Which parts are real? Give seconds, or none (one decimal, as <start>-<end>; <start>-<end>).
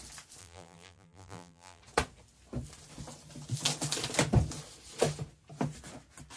0.0-0.4; 1.8-6.4